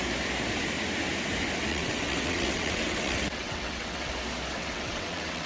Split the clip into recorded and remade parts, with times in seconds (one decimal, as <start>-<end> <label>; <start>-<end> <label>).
0.0-1.7 recorded; 1.7-4.1 remade; 4.1-4.5 recorded; 4.5-5.5 remade